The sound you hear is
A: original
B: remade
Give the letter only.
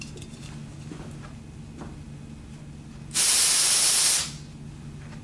A